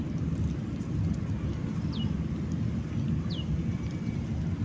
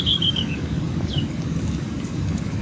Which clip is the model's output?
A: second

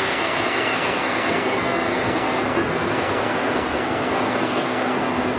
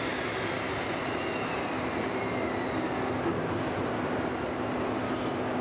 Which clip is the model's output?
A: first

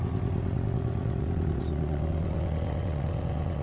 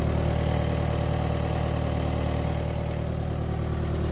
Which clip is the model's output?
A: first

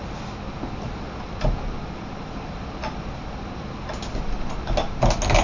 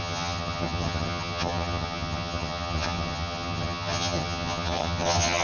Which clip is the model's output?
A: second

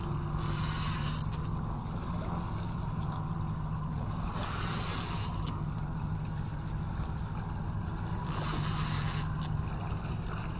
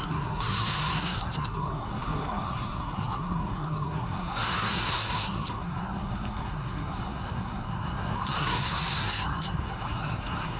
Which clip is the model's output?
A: second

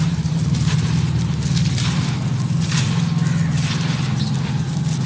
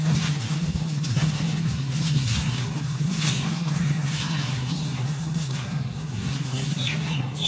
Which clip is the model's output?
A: second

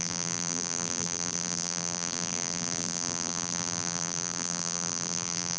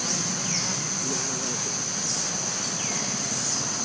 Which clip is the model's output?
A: first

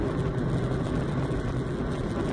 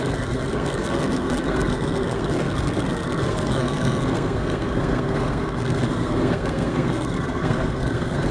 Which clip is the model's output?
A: second